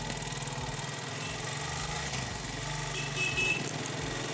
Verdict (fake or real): real